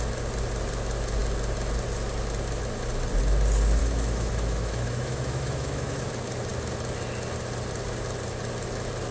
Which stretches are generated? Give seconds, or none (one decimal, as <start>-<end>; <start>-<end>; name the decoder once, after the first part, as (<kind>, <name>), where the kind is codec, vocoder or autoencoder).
3.8-6.1 (autoencoder, DAC-VAE)